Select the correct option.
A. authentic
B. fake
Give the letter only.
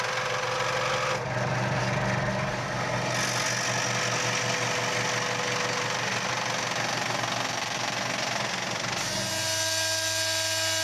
A